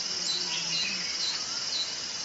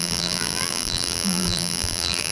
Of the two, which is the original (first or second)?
first